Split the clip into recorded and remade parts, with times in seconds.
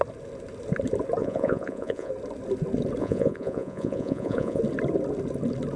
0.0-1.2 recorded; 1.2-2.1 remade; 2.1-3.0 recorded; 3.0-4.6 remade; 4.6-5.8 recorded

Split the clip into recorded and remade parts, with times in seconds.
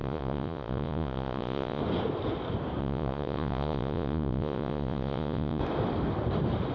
0.0-1.8 remade; 1.8-2.8 recorded; 2.8-5.6 remade; 5.6-6.7 recorded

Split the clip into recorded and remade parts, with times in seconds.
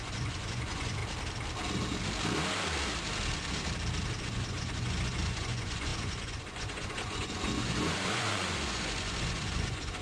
0.0-1.0 remade; 1.0-4.2 recorded; 4.2-10.0 remade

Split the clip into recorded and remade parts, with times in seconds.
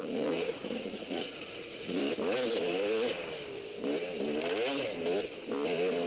0.0-2.0 remade; 2.0-6.1 recorded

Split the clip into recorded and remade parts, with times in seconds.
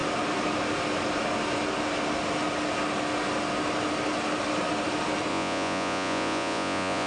0.0-5.3 recorded; 5.3-7.1 remade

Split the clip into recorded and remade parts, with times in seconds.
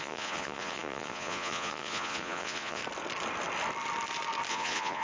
0.0-2.8 remade; 2.8-4.5 recorded; 4.5-5.0 remade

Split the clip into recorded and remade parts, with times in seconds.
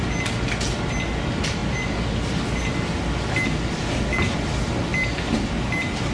0.0-6.1 recorded